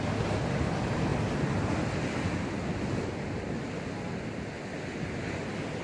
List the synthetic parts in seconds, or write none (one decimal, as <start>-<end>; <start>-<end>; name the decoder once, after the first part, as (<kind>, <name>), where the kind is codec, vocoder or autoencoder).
none